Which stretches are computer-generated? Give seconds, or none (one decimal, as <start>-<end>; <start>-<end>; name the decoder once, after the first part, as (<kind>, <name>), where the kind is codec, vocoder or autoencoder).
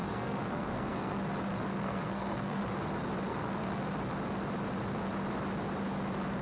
0.0-1.2 (codec, SNAC); 1.7-2.6; 3.3-3.8